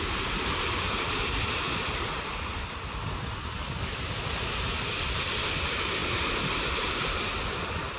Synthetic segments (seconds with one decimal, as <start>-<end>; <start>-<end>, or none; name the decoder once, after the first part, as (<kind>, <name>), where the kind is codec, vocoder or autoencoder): none